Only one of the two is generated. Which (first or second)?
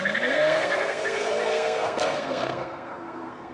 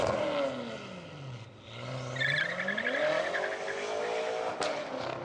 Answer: first